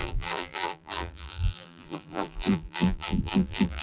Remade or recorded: remade